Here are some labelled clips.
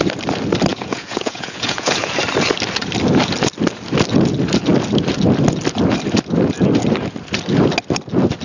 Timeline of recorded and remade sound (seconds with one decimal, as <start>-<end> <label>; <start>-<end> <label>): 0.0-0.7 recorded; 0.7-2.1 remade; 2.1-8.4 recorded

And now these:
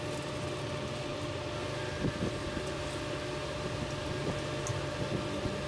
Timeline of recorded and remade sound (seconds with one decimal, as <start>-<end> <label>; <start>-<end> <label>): 0.0-5.7 recorded

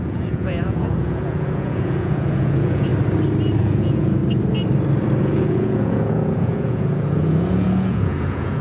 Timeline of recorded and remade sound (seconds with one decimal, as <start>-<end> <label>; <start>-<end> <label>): 0.0-2.9 remade; 2.9-3.6 recorded; 3.6-4.2 remade; 4.2-5.2 recorded; 5.2-8.6 remade

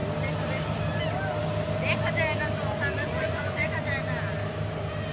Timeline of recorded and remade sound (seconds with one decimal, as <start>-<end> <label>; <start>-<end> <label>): 0.0-3.0 recorded; 3.0-3.7 remade; 3.7-5.1 recorded